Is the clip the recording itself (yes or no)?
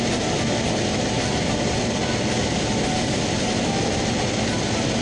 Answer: yes